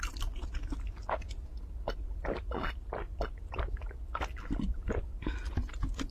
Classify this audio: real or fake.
real